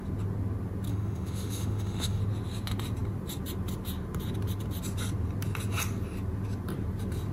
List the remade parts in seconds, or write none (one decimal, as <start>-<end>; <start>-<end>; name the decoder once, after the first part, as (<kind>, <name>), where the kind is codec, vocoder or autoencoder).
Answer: 0.9-2.2 (autoencoder, DAC-VAE)